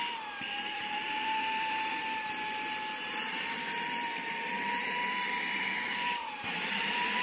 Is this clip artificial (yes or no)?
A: yes